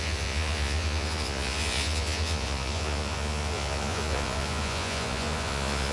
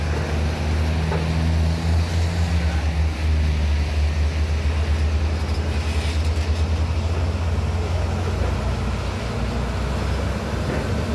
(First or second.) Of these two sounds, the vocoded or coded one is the first